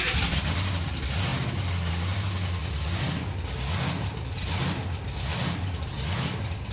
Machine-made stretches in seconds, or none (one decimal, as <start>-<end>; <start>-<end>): 2.6-6.7